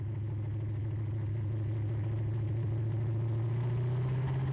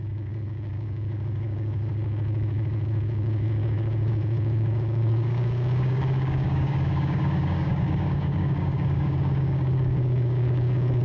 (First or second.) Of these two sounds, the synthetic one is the second